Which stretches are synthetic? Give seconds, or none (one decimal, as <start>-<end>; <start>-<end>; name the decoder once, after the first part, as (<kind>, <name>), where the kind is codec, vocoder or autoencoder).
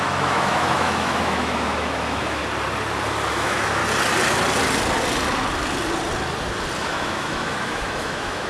0.0-2.4 (autoencoder, DAC-VAE); 3.3-3.8; 6.8-8.5